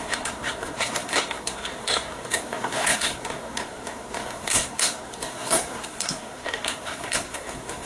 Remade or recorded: remade